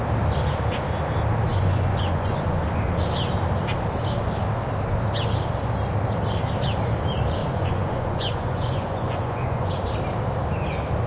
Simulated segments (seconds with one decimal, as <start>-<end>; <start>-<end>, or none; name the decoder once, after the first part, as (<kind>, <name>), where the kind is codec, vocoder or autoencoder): 1.5-2.6 (vocoder, Vocos); 7.4-9.7